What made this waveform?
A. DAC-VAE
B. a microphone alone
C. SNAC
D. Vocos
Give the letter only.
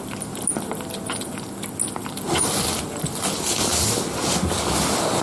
B